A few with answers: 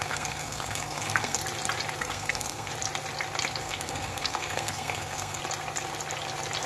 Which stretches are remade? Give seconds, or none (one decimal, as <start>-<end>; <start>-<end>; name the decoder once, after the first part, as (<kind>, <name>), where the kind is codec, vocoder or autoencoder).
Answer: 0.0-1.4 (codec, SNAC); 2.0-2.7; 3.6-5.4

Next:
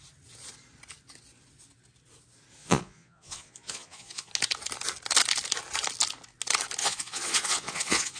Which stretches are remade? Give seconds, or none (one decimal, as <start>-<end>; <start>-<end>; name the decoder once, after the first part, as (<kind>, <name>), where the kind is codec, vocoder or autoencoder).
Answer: 2.6-4.3 (vocoder, Vocos); 6.8-8.2

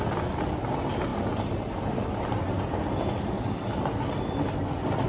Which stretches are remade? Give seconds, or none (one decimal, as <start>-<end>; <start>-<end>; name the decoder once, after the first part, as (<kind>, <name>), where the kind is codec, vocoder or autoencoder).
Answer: none

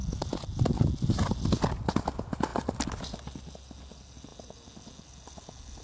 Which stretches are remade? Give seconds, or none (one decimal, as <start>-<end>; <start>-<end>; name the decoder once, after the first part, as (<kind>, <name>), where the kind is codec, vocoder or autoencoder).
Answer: none